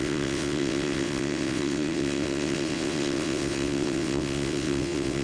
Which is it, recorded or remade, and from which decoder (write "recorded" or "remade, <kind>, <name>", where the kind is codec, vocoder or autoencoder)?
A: remade, vocoder, WaveNeXt